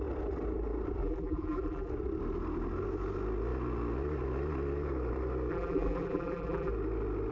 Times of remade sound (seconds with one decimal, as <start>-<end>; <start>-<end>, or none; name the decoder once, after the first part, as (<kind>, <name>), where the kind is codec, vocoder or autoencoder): 1.0-1.9 (vocoder, BigVGAN v2); 5.5-6.7